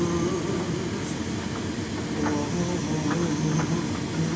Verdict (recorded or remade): recorded